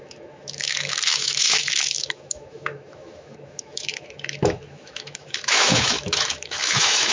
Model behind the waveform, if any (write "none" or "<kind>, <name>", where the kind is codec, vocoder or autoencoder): autoencoder, DAC-VAE